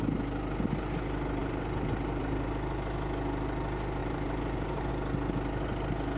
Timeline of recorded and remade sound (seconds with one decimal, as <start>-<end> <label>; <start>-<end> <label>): 0.0-1.4 recorded; 1.4-2.5 remade; 2.5-4.0 recorded; 4.0-4.9 remade; 4.9-6.2 recorded